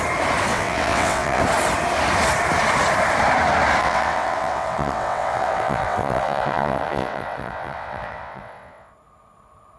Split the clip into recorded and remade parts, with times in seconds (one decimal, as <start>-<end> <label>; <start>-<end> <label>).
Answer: 0.0-0.5 recorded; 0.5-1.4 remade; 1.4-3.8 recorded; 3.8-8.9 remade; 8.9-9.8 recorded